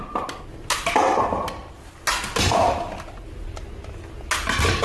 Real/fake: real